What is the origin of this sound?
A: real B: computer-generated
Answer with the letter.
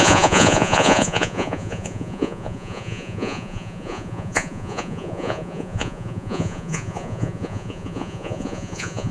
B